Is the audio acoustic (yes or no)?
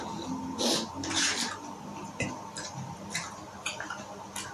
yes